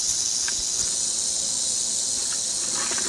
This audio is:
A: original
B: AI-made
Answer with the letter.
A